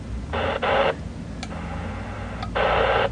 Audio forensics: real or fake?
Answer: real